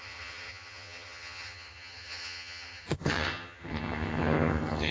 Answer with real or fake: fake